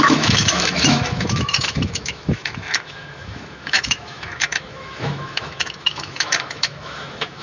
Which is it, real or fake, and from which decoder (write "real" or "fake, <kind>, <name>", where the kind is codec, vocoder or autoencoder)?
fake, autoencoder, DAC-VAE